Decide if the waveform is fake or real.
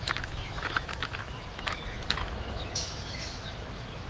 fake